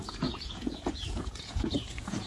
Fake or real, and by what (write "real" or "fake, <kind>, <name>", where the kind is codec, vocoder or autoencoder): fake, vocoder, Vocos